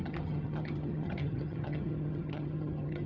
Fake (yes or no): yes